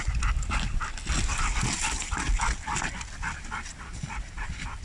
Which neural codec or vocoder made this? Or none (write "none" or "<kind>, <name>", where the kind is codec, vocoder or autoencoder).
none